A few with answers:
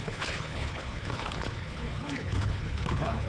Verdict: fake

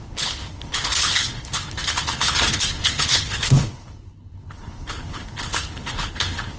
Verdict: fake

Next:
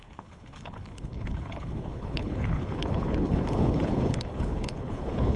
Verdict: fake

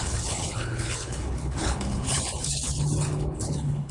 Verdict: fake